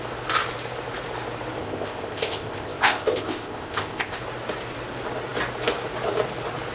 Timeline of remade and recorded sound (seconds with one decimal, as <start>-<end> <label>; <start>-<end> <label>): 0.0-1.6 recorded; 1.6-4.2 remade; 4.2-6.7 recorded